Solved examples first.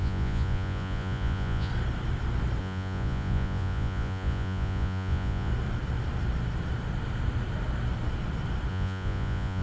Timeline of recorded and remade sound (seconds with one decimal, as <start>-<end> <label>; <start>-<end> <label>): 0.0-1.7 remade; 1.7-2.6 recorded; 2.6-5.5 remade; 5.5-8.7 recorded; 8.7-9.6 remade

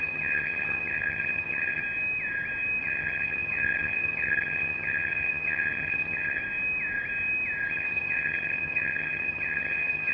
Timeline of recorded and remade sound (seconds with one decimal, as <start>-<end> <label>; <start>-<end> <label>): 0.0-1.8 remade; 1.8-2.8 recorded; 2.8-6.4 remade; 6.4-7.7 recorded; 7.7-10.1 remade

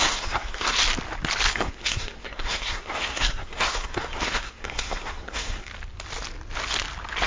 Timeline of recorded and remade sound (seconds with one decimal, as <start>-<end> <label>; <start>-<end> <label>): 0.0-0.8 remade; 0.8-1.5 recorded; 1.5-5.7 remade; 5.7-7.3 recorded